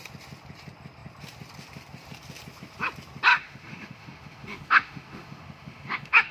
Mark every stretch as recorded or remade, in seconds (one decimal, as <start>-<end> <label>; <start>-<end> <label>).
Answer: 0.0-3.3 recorded; 3.3-6.3 remade